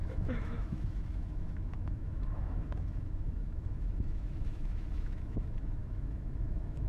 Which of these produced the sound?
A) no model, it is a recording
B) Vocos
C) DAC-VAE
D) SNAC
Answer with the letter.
C